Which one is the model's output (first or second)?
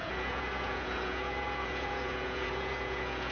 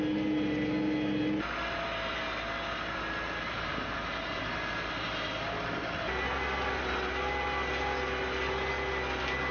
first